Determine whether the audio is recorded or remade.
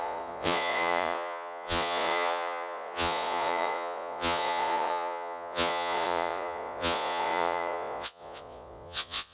remade